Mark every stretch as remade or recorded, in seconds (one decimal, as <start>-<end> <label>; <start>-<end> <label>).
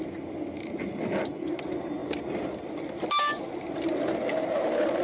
0.0-5.0 recorded